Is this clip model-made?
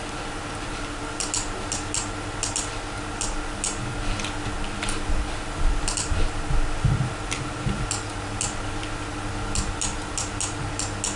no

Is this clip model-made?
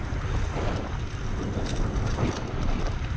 yes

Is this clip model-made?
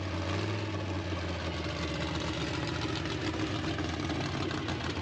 no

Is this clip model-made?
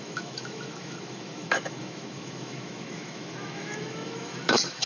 yes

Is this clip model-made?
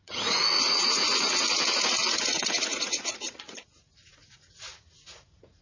yes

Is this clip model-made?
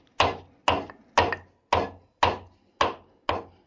no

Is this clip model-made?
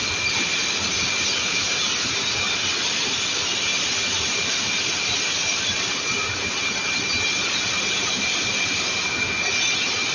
no